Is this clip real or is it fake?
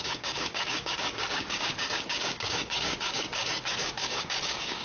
fake